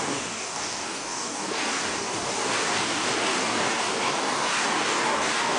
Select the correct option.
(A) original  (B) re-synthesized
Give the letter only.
B